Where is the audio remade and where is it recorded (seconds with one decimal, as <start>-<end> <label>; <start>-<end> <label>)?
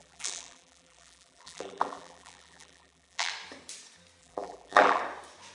0.0-3.3 remade; 3.3-4.2 recorded; 4.2-5.0 remade; 5.0-5.5 recorded